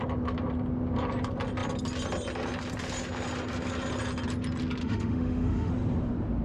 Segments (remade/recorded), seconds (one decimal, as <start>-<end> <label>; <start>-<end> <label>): 0.0-4.8 recorded; 4.8-5.7 remade; 5.7-6.4 recorded